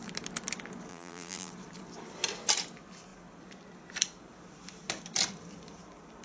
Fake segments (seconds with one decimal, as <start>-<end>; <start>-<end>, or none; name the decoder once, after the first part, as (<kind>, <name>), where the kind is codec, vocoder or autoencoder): 0.9-1.5 (vocoder, BigVGAN v2)